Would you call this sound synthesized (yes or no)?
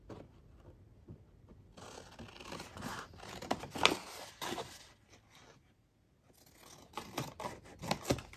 no